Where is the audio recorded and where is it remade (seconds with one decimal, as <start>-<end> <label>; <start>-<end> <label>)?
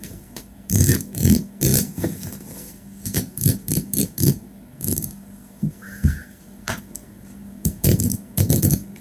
0.0-9.0 remade